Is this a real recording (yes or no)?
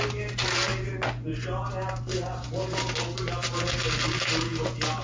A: yes